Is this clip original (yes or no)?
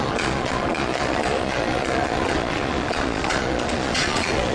no